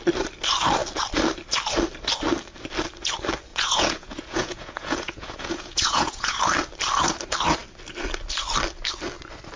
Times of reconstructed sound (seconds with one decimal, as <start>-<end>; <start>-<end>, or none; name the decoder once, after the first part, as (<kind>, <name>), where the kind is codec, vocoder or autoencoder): 3.5-6.4 (vocoder, Vocos)